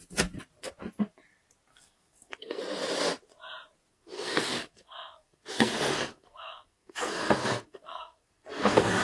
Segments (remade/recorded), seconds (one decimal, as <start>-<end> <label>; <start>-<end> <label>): 0.0-1.7 recorded; 1.7-2.6 remade; 2.6-3.9 recorded; 3.9-9.0 remade